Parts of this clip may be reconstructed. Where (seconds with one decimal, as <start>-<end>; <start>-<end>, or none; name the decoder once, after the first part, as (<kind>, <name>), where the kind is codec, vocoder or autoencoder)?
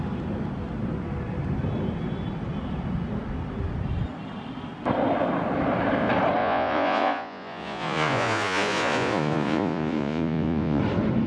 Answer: 6.4-10.8 (vocoder, Vocos)